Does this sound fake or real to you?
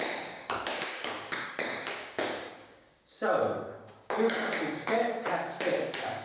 fake